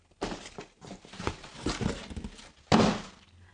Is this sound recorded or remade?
recorded